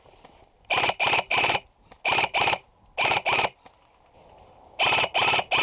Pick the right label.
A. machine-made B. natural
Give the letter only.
B